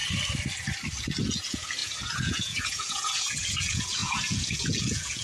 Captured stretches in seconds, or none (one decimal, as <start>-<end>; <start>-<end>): 0.0-1.2